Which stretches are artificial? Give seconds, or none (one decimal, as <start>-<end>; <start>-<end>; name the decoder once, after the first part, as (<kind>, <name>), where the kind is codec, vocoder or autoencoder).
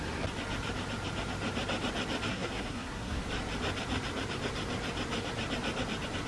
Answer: 2.3-3.2 (codec, SNAC)